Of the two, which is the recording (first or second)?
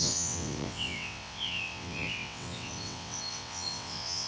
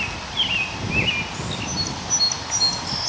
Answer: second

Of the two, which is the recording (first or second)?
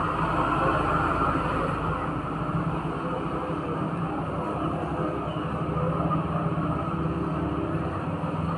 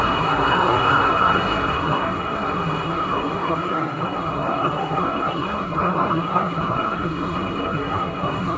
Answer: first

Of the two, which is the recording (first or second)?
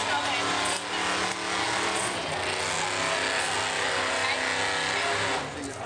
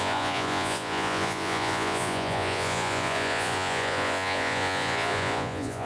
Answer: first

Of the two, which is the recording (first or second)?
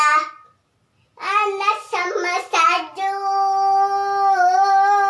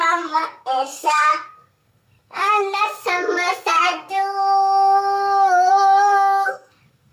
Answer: first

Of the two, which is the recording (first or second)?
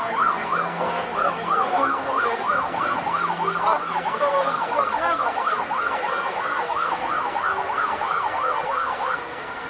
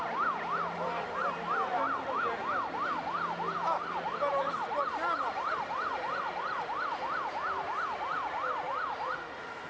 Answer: second